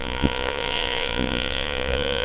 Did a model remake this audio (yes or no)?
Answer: yes